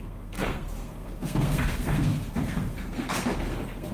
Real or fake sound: fake